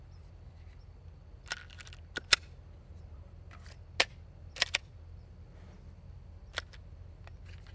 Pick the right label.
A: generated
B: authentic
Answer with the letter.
B